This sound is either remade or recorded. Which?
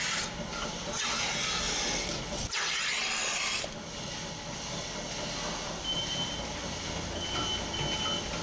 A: recorded